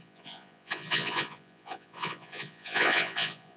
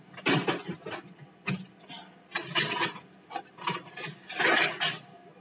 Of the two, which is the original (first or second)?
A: second